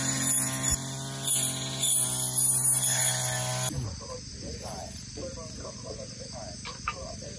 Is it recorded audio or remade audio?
recorded